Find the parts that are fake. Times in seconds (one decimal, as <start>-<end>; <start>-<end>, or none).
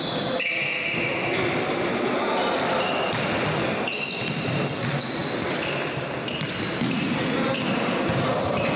none